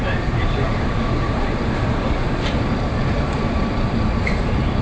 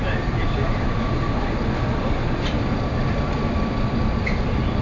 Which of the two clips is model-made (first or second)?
first